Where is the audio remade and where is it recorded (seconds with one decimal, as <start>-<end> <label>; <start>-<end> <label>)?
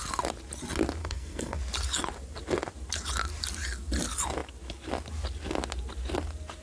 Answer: 0.0-1.0 recorded; 1.0-1.6 remade; 1.6-6.6 recorded